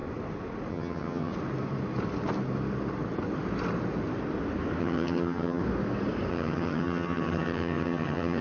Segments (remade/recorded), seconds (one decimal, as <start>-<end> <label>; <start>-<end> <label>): 0.0-0.7 recorded; 0.7-1.3 remade; 1.3-4.8 recorded; 4.8-5.6 remade; 5.6-6.3 recorded; 6.3-8.4 remade